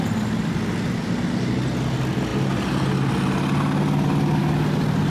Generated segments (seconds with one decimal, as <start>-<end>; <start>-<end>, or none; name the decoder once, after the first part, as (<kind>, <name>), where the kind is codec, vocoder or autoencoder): none